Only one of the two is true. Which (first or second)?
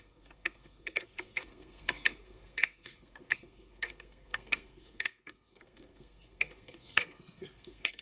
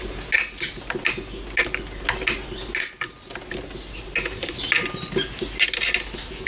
second